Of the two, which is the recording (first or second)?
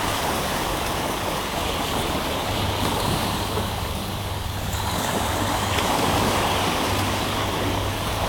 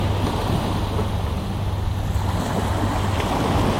second